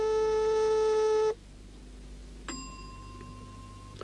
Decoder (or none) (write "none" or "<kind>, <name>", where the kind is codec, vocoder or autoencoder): none